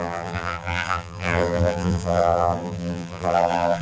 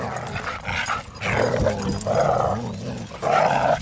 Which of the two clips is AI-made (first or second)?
first